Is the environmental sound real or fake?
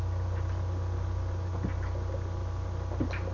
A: real